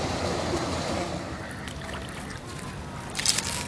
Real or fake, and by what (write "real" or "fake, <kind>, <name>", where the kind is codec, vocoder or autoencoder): real